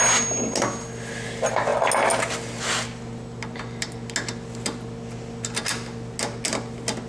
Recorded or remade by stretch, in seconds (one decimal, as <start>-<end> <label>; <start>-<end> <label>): 0.0-7.1 recorded